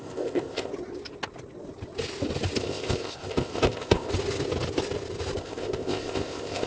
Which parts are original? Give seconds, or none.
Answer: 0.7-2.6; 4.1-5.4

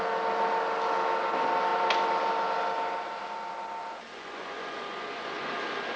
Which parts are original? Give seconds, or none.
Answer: 0.0-4.1; 5.5-6.0

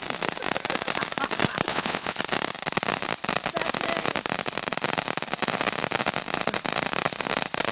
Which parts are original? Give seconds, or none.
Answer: 0.0-1.7; 2.2-7.7

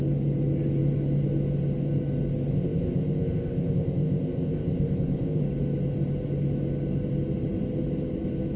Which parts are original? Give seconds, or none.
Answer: 0.0-2.5; 5.4-8.6

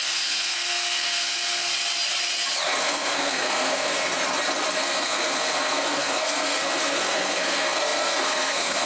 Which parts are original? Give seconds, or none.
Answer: 1.7-2.8; 4.1-4.8

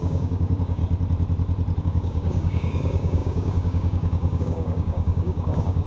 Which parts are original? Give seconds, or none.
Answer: 0.8-1.8

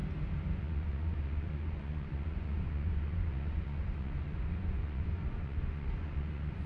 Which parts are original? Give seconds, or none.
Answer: 0.0-0.6